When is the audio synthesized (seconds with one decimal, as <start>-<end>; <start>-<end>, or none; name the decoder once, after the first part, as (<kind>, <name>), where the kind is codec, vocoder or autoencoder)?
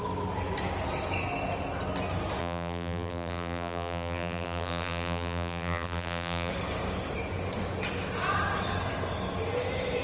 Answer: 2.4-6.5 (vocoder, BigVGAN v2)